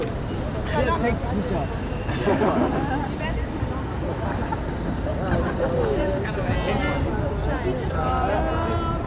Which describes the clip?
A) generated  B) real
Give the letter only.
B